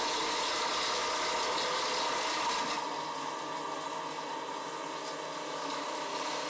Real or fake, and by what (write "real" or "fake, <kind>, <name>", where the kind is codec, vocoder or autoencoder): real